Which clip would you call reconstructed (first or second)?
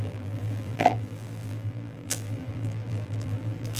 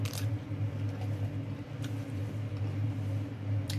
first